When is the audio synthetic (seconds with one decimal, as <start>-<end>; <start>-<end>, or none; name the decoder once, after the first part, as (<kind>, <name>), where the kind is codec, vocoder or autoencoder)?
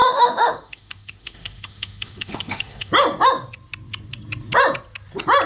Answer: 0.0-2.9 (autoencoder, DAC-VAE)